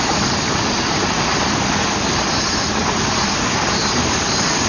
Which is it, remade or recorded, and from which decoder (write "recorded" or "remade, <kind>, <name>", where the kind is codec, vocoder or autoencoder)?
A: recorded